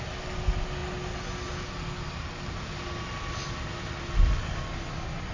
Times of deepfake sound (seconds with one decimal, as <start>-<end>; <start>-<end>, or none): none